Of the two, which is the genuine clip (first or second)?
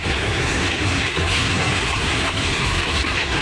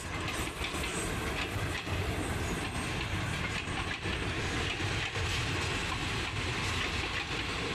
second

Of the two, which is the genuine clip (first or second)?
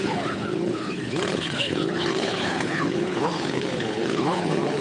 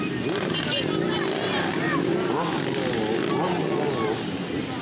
second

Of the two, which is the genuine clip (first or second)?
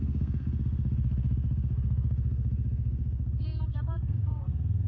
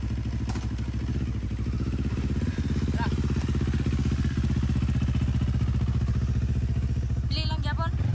second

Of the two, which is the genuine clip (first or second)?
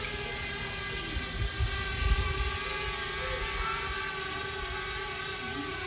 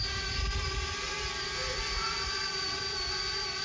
first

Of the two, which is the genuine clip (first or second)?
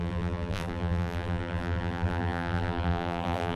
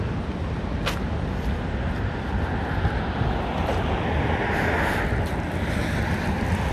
second